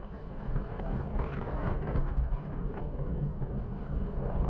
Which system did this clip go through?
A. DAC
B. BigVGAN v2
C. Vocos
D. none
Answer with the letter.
A